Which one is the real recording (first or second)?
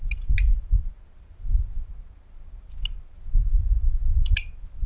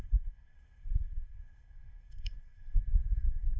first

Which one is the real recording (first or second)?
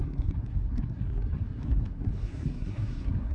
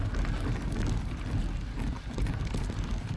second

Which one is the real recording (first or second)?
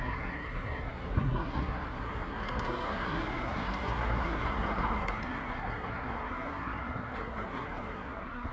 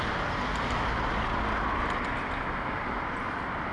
second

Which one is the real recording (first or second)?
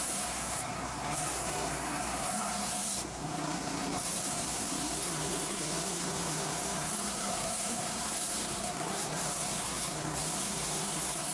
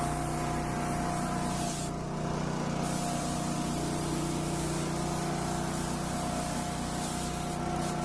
second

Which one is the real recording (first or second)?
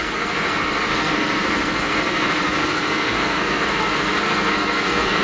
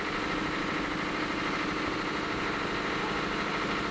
second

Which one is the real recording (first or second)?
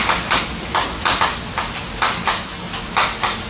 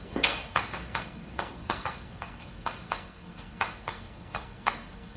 first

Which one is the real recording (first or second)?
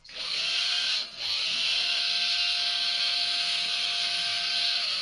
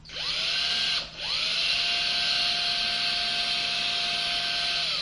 second